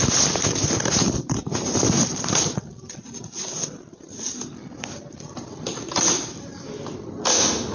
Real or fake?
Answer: real